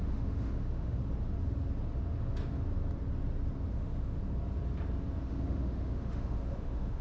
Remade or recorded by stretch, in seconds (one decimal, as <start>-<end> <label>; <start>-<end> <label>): 0.0-1.0 remade; 1.0-3.7 recorded; 3.7-4.2 remade; 4.2-5.2 recorded; 5.2-7.0 remade